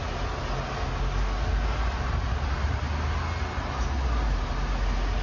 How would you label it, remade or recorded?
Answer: recorded